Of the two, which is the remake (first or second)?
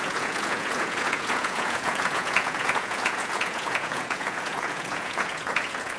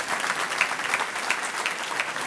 first